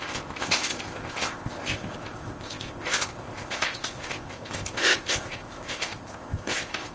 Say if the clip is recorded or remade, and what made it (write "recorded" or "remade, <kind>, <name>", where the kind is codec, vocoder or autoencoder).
remade, codec, ZipCodec